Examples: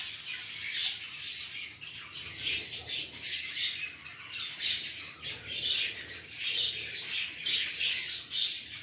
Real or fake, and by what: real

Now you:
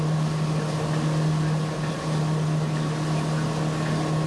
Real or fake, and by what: real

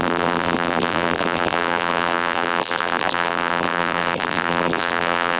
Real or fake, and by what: fake, vocoder, BigVGAN v2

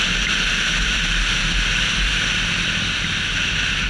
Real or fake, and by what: real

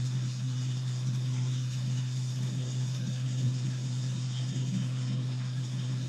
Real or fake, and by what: fake, codec, SNAC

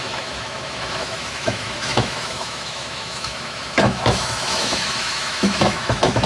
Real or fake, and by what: fake, autoencoder, DAC-VAE